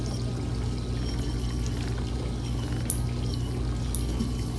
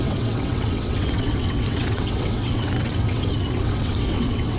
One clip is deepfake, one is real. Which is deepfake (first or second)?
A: second